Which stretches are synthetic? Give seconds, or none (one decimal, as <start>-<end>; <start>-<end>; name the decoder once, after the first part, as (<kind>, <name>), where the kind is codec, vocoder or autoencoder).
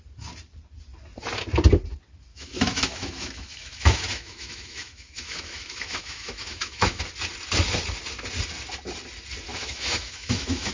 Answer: 2.3-7.0 (autoencoder, DAC-VAE); 9.5-10.7